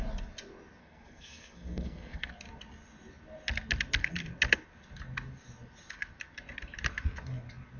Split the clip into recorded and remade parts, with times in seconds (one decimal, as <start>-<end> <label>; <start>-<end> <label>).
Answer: 0.0-0.8 recorded; 0.8-2.3 remade; 2.3-7.8 recorded